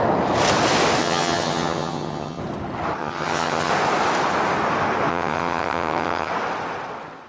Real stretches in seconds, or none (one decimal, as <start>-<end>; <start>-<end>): 0.0-1.0; 2.4-3.0; 3.7-5.1; 6.3-7.3